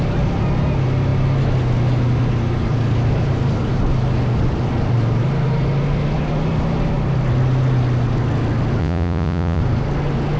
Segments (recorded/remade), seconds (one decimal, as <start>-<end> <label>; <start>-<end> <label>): 0.0-8.8 recorded; 8.8-9.6 remade; 9.6-10.4 recorded